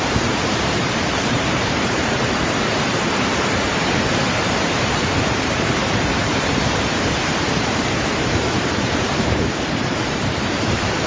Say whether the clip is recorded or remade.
remade